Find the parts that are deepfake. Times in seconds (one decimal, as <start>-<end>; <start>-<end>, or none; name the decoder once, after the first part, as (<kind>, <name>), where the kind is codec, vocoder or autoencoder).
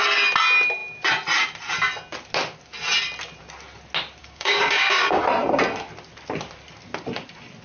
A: 4.2-5.2 (codec, DAC)